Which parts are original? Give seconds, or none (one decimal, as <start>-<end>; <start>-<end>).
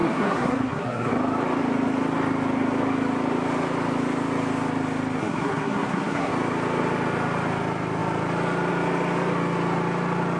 1.1-5.2; 6.3-10.4